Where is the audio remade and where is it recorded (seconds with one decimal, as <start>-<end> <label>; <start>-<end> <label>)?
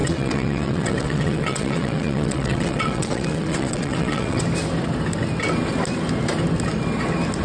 0.0-4.4 remade; 4.4-7.4 recorded